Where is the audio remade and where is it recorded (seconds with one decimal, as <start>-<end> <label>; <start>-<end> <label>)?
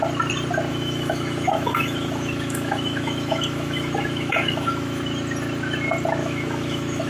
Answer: 0.0-0.7 recorded; 0.7-5.0 remade; 5.0-6.2 recorded; 6.2-7.1 remade